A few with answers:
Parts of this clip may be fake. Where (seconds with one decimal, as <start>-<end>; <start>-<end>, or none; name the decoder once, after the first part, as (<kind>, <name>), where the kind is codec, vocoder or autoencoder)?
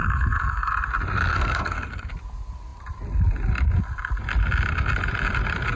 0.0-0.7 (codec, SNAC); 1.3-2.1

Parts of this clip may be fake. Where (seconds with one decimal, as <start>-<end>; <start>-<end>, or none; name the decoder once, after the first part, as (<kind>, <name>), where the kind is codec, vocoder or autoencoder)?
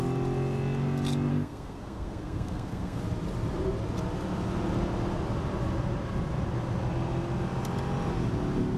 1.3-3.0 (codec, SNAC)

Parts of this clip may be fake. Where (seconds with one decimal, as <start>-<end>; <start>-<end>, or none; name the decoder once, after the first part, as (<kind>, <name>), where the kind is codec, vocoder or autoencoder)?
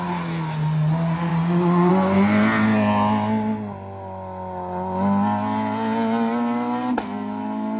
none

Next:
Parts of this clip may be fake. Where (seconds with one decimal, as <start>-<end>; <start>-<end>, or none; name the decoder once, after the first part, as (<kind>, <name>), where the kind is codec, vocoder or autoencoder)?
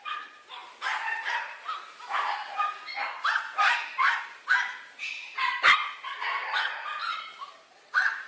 none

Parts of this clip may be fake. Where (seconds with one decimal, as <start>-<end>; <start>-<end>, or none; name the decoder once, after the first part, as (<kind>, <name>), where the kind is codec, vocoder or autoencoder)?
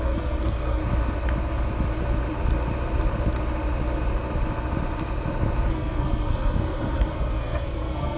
0.0-0.8 (codec, SNAC); 5.7-8.2